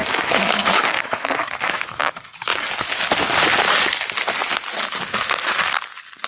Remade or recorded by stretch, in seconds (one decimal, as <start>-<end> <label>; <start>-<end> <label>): 0.0-2.5 remade; 2.5-6.3 recorded